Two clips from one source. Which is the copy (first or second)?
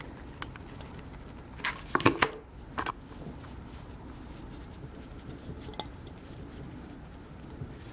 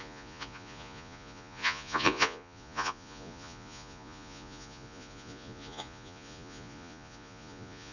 second